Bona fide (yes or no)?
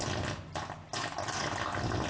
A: yes